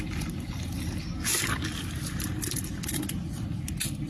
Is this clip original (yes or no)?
yes